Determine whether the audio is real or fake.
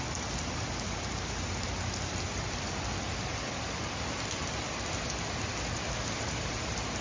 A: real